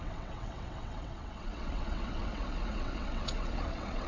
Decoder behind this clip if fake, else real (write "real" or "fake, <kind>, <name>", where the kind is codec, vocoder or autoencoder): fake, vocoder, WaveNeXt